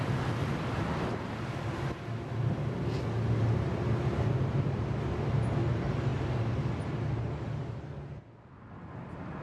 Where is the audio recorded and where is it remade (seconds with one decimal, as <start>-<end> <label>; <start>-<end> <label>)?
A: 0.0-9.4 recorded